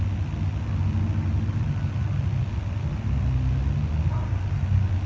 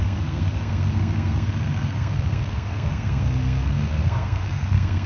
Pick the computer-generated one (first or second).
second